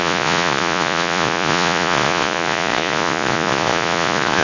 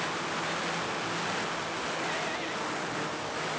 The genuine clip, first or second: second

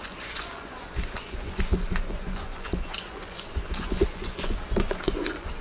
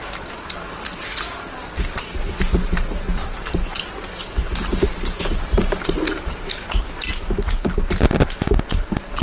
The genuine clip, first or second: second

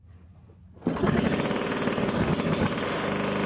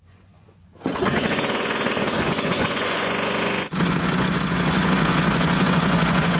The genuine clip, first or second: first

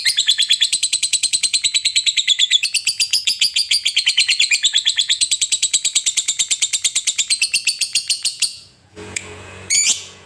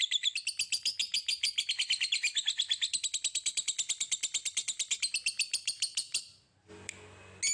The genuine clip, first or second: second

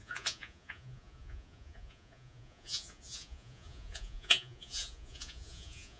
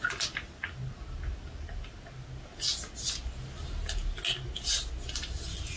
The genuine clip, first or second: second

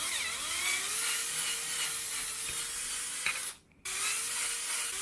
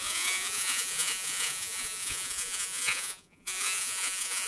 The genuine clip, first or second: first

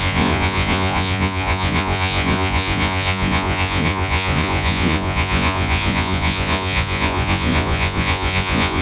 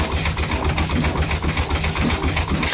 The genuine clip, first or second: second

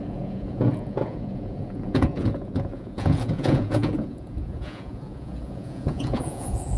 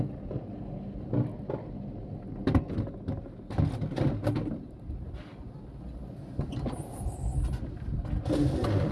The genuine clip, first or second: second